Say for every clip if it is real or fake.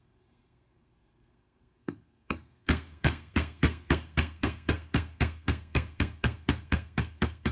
fake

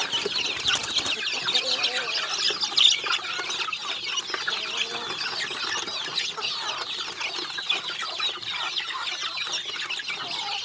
real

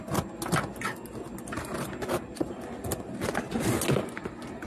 real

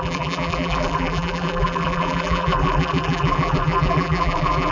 fake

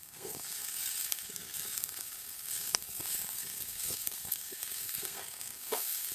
fake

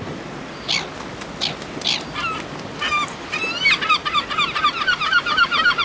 real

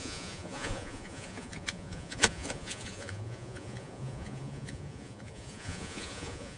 fake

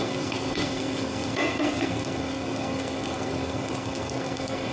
fake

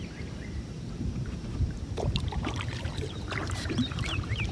fake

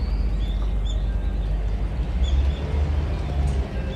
real